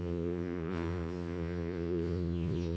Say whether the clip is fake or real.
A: fake